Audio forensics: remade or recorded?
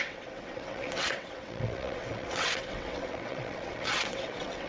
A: remade